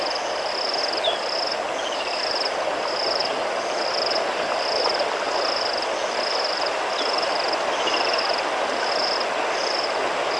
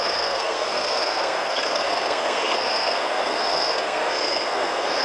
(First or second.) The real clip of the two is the first